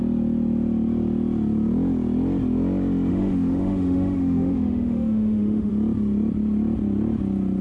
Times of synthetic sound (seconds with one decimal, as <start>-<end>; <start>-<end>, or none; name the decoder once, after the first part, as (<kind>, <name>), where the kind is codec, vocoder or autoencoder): 3.1-5.7 (autoencoder, DAC-VAE)